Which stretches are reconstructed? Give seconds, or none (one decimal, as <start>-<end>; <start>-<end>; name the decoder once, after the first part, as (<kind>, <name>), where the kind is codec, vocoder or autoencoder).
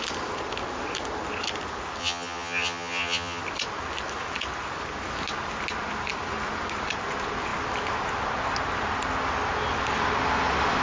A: 2.0-3.4 (vocoder, HiFi-GAN)